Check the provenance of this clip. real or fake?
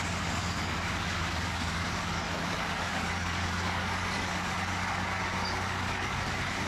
fake